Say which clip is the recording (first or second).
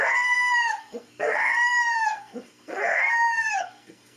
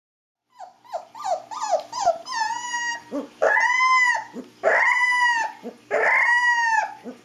second